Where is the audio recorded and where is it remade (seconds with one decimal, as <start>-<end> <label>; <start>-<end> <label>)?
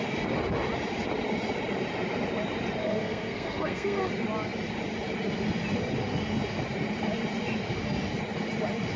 0.0-2.8 recorded; 2.8-4.1 remade; 4.1-9.0 recorded